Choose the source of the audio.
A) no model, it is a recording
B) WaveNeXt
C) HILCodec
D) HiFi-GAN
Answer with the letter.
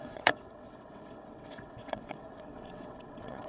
B